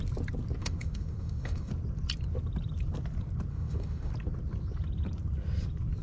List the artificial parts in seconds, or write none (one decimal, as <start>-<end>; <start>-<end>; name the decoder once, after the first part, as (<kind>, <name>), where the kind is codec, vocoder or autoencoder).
0.6-1.7 (autoencoder, DAC-VAE); 3.5-4.1